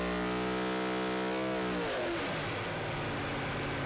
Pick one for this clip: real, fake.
real